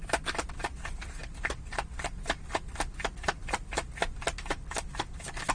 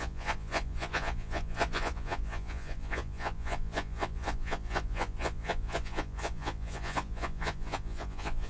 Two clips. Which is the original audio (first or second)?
first